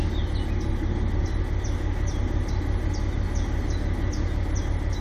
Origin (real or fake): real